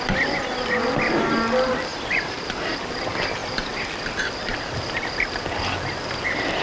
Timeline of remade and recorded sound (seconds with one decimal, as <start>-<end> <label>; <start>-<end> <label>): 0.0-1.9 recorded; 1.9-2.8 remade; 2.8-6.6 recorded